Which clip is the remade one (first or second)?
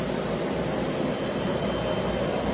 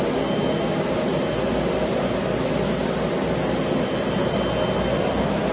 first